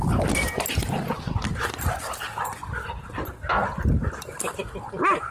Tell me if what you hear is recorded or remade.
recorded